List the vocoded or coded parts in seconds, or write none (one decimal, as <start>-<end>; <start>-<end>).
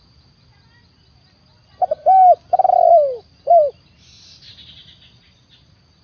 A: none